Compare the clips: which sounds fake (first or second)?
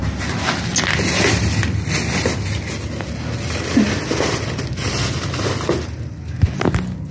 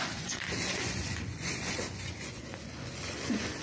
second